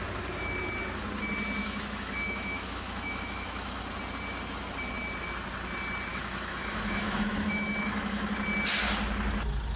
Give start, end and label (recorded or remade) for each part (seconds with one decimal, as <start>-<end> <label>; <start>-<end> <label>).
0.0-1.6 recorded; 1.6-3.8 remade; 3.8-6.1 recorded; 6.1-8.3 remade; 8.3-9.8 recorded